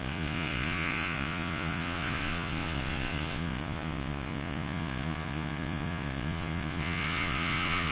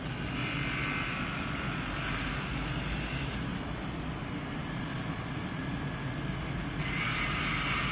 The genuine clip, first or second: second